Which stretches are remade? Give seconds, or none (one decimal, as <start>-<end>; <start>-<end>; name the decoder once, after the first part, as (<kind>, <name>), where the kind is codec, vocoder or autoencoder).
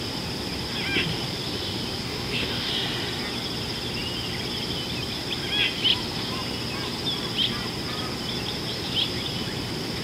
2.0-2.7 (codec, DAC)